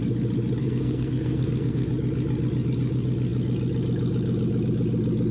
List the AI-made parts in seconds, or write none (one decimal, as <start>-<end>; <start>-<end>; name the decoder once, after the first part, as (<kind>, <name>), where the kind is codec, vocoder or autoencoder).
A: 0.6-1.9 (codec, SNAC)

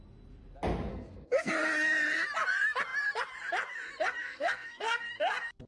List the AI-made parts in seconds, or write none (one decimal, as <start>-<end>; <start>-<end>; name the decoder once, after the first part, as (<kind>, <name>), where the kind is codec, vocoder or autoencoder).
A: 0.9-1.5 (codec, SNAC); 4.2-5.0

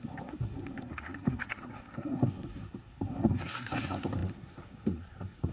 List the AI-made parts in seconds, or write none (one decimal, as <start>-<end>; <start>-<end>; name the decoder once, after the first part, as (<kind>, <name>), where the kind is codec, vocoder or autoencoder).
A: 0.0-5.5 (codec, SNAC)

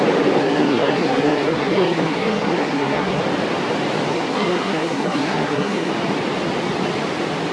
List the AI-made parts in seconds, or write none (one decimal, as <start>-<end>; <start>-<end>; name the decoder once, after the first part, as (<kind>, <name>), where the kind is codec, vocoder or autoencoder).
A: 0.4-3.2 (codec, SNAC); 4.1-5.9

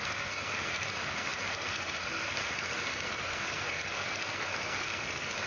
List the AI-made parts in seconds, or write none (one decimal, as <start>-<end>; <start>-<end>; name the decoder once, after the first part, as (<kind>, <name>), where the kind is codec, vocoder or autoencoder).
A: 0.0-5.5 (codec, SNAC)

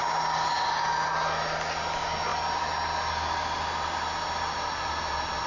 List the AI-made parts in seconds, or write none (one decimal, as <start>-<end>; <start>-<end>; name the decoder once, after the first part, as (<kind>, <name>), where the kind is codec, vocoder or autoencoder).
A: none

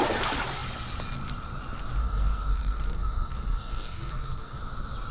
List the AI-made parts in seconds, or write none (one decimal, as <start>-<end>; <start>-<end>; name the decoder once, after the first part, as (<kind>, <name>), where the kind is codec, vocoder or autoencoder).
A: 2.0-4.6 (codec, SNAC)